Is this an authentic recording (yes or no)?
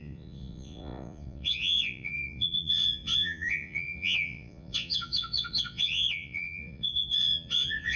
no